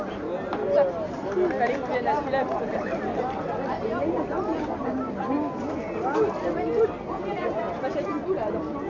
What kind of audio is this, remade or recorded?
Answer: recorded